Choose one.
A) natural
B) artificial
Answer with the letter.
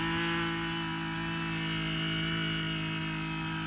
A